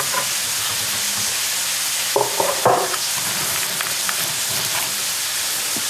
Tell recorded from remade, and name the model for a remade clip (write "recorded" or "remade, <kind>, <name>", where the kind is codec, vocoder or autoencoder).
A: remade, vocoder, BigVGAN v2